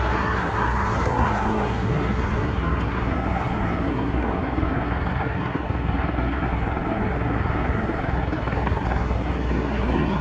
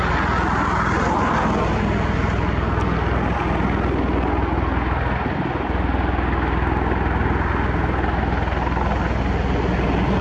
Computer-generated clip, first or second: first